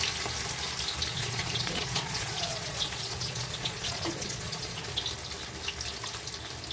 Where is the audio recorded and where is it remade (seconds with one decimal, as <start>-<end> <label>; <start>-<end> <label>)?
0.0-1.1 recorded; 1.1-5.0 remade; 5.0-6.7 recorded